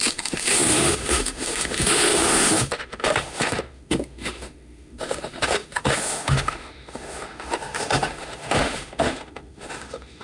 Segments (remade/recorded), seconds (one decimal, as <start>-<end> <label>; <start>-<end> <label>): 0.0-10.2 remade

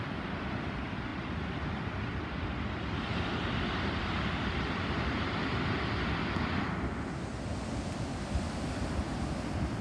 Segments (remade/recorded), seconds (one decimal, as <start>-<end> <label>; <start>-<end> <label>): 0.0-9.8 recorded

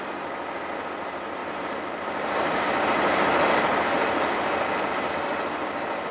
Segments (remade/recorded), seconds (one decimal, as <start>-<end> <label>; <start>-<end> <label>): 0.0-1.4 recorded; 1.4-5.1 remade; 5.1-6.1 recorded

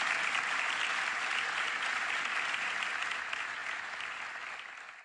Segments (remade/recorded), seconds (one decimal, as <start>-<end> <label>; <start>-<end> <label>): 0.0-5.0 recorded